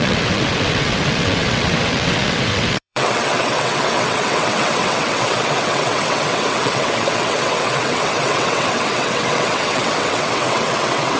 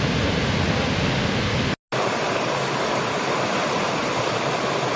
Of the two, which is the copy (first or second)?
first